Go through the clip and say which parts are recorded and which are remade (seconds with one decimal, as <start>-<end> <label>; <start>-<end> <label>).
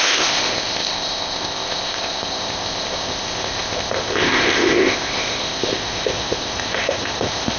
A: 0.0-7.6 remade